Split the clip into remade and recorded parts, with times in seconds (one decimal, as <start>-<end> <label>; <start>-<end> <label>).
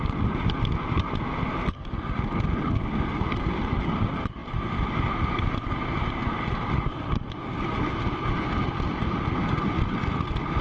0.0-10.6 recorded